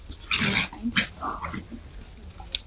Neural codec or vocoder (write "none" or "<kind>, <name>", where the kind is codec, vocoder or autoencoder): none